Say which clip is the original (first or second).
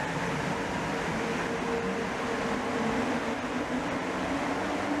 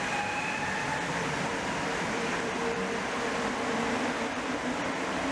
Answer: first